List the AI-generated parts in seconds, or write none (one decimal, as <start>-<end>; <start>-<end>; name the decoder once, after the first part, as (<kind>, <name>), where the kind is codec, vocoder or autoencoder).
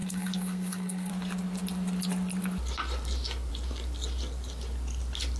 0.0-1.1 (codec, SNAC)